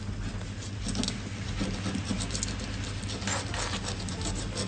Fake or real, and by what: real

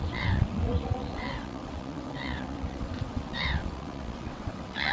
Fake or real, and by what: fake, vocoder, WaveNeXt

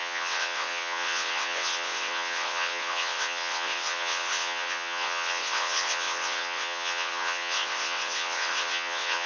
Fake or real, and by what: fake, vocoder, WaveNeXt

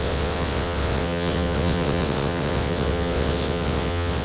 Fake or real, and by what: fake, vocoder, WaveNeXt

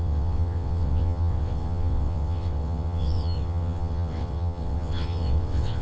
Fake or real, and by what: fake, vocoder, WaveNeXt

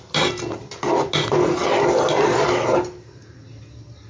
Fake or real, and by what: real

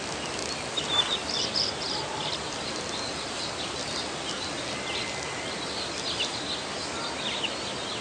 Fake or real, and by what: real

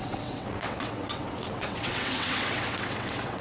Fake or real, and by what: fake, vocoder, WaveNeXt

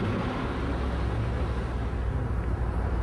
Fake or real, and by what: real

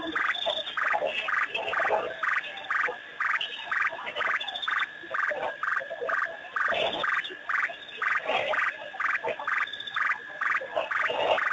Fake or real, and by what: real